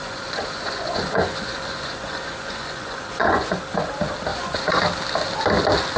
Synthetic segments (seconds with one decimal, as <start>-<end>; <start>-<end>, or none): 0.0-3.6; 4.3-4.8